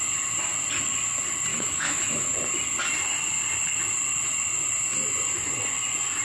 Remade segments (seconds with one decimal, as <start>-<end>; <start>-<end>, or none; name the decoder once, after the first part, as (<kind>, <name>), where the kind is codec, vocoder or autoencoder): 1.5-2.3 (autoencoder, DAC-VAE)